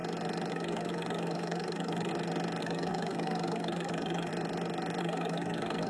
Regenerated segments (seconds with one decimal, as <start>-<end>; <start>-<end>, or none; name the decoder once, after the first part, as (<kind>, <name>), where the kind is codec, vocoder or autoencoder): 0.5-2.1 (codec, SNAC); 2.6-4.3; 5.0-5.9